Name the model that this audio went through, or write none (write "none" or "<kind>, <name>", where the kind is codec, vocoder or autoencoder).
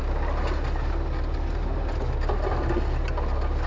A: none